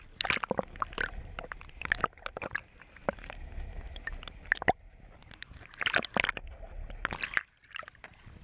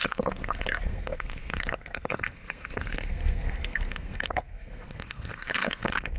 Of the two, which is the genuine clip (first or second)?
first